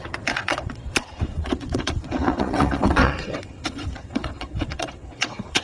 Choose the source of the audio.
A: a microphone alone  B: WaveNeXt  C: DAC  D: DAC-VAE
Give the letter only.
B